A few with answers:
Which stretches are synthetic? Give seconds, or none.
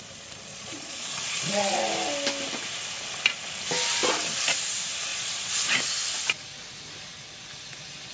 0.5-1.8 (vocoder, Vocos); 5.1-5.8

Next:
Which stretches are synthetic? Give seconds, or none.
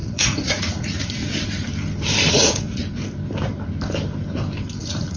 0.0-1.2 (vocoder, Vocos); 2.3-2.8; 4.8-5.2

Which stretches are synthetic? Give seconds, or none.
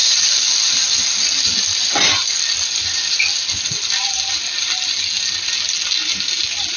none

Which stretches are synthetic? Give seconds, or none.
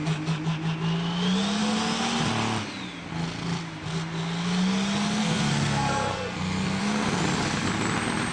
5.2-6.8 (codec, SNAC)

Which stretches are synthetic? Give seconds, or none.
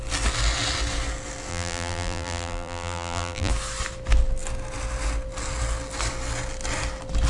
1.5-3.5 (vocoder, BigVGAN v2)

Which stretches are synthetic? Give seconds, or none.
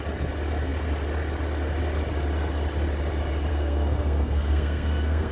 3.5-5.3 (codec, SNAC)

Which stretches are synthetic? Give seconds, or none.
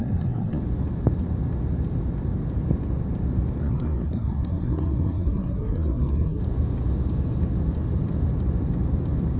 0.0-0.6 (codec, SNAC); 3.6-6.4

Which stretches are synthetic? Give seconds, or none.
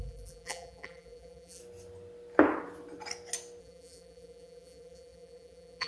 0.0-1.6 (vocoder, BigVGAN v2); 3.6-5.9